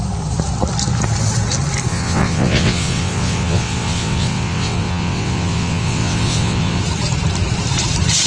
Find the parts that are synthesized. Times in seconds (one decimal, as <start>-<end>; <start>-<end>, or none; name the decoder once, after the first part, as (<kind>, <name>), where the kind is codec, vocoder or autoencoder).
1.9-6.8 (vocoder, WaveNeXt)